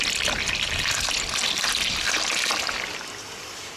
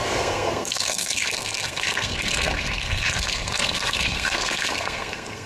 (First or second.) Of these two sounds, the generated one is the second